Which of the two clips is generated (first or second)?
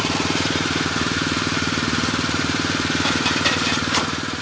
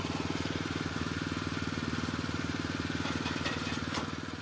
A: first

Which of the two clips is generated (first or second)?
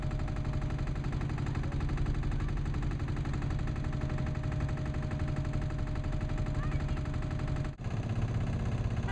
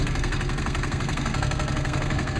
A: second